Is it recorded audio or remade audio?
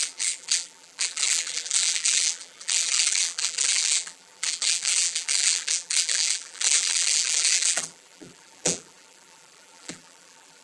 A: remade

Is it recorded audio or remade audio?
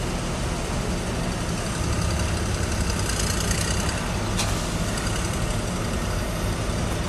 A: recorded